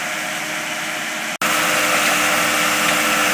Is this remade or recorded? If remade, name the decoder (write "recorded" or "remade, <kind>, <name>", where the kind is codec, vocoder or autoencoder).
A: recorded